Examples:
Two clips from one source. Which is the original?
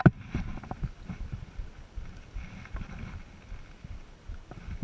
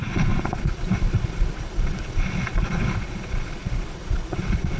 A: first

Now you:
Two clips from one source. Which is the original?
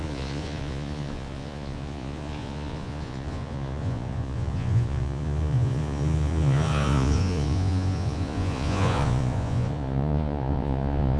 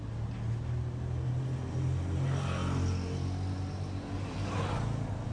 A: second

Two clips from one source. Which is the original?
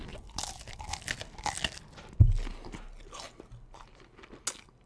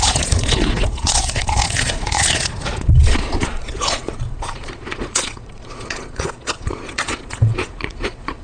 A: first